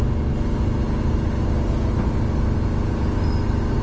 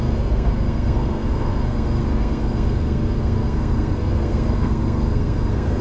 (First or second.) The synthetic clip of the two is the second